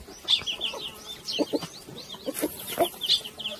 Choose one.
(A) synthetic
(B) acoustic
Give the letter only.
B